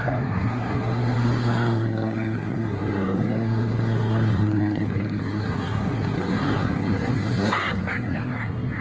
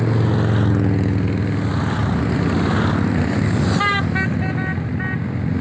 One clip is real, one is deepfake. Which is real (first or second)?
second